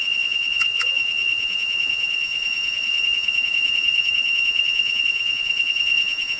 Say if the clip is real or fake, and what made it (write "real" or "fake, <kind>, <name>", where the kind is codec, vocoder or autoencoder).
fake, vocoder, Vocos